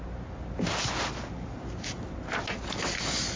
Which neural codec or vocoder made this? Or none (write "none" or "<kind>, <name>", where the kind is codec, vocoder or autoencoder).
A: none